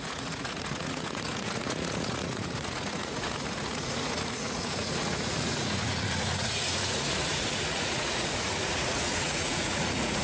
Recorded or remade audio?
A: remade